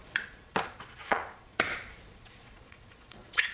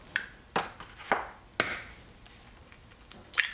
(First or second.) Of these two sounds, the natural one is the second